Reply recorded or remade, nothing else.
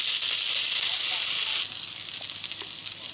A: recorded